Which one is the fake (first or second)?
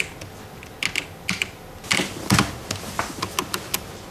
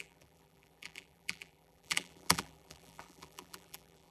second